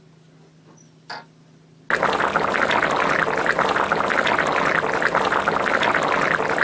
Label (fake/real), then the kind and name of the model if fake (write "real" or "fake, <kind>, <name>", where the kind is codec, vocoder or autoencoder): real